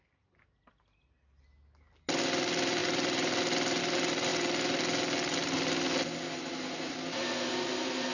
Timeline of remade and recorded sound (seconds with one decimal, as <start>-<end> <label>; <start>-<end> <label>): 0.0-8.1 recorded